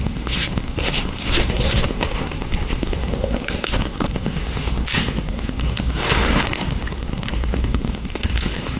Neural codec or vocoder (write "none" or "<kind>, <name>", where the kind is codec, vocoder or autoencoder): codec, SNAC